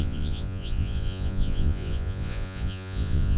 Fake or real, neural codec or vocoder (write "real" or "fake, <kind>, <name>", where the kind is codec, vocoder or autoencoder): fake, vocoder, Vocos